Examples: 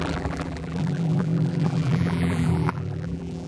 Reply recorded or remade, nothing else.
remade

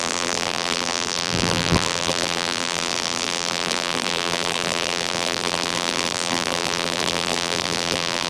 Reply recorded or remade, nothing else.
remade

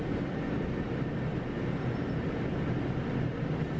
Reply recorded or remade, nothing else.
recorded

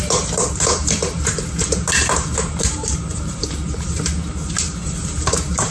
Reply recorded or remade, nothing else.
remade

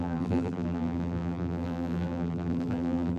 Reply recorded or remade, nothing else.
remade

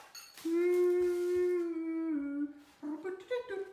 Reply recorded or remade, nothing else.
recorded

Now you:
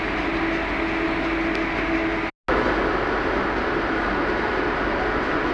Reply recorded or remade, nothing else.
recorded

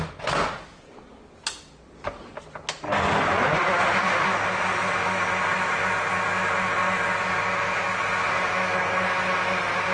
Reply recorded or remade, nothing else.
recorded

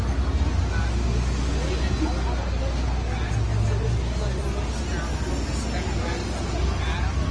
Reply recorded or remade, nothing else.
recorded